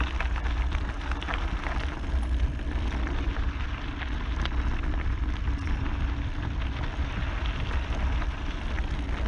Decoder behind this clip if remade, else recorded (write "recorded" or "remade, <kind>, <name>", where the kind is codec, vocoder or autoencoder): recorded